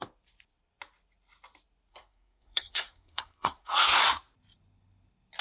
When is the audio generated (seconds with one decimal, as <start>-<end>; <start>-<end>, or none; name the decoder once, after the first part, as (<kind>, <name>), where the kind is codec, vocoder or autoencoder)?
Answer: 1.9-4.0 (codec, SNAC)